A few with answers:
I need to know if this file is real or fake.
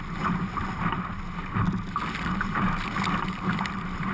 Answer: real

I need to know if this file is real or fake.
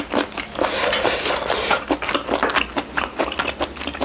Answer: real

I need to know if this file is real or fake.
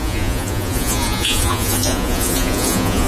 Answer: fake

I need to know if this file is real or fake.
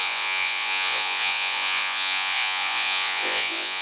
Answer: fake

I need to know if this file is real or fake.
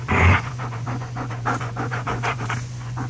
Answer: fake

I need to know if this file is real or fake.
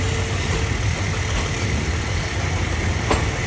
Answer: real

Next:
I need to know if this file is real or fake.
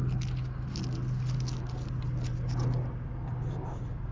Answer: real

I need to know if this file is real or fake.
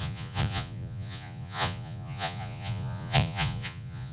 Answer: fake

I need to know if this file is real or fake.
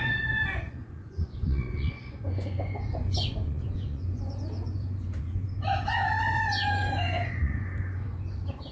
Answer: fake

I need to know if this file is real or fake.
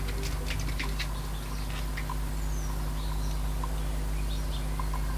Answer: real